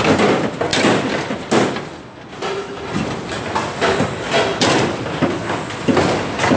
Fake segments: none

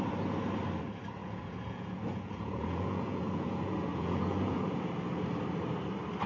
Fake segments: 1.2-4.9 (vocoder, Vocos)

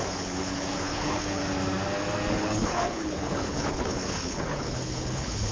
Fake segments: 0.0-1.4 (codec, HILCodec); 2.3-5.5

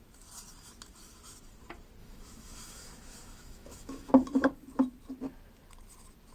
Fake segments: 2.0-4.1 (autoencoder, DAC-VAE)